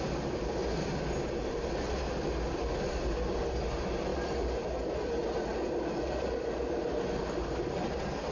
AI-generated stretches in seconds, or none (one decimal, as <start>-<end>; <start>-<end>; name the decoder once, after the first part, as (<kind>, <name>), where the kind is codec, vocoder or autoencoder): none